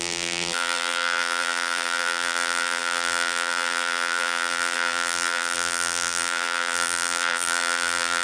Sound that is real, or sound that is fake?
fake